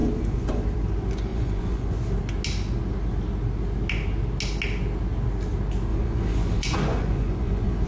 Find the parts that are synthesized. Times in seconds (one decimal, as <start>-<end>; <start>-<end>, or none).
0.0-0.6; 1.3-2.0; 5.9-7.9